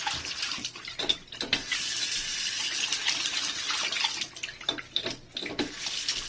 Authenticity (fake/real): real